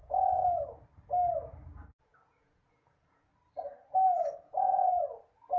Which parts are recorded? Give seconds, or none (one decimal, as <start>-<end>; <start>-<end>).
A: 0.4-2.0; 3.3-4.4

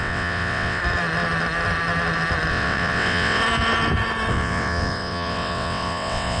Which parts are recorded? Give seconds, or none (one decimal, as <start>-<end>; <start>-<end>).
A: 0.8-2.5; 3.4-4.3

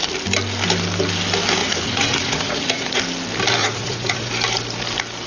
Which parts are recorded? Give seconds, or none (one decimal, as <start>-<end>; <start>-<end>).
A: 0.0-1.6; 3.0-3.6; 4.3-5.3

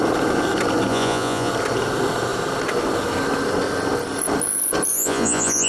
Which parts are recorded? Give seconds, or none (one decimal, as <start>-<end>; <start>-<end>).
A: 0.0-0.9; 1.5-4.9

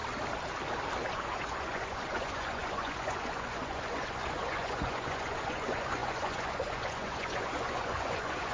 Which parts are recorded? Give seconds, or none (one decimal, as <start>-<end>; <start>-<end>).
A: 0.0-1.1